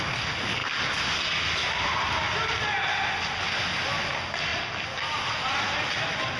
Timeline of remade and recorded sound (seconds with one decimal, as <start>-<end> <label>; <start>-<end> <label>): 0.0-6.4 recorded